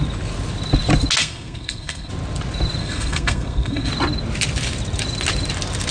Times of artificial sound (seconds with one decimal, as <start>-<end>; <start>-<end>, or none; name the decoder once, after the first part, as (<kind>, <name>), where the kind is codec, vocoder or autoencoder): 1.2-2.1 (codec, SNAC); 2.8-3.9